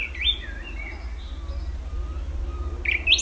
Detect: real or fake real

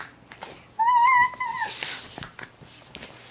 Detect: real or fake real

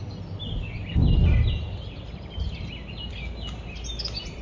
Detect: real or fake real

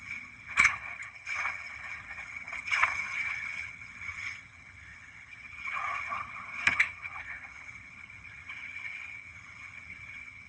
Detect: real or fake fake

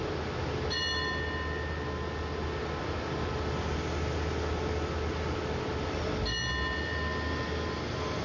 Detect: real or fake real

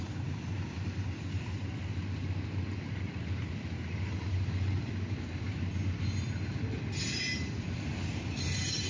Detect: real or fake real